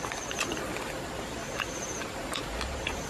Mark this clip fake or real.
real